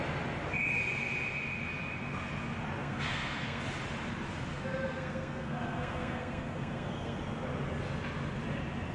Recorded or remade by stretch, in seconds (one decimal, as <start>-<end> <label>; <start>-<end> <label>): 0.0-2.8 recorded; 2.8-3.6 remade; 3.6-4.5 recorded; 4.5-7.2 remade; 7.2-8.9 recorded